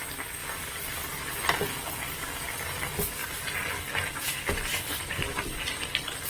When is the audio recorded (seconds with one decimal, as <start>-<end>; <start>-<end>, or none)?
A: 0.4-2.2; 3.2-4.0